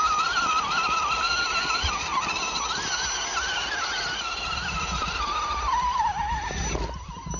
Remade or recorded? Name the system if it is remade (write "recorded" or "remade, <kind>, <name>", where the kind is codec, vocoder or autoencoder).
recorded